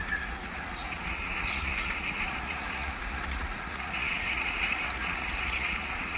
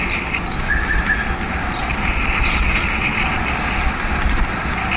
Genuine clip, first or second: second